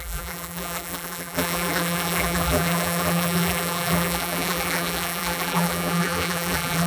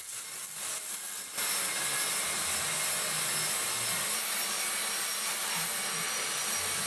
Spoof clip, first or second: first